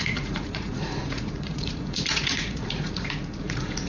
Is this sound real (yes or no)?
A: no